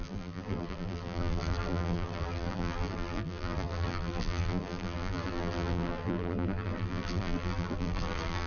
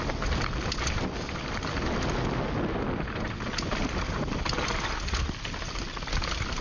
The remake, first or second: first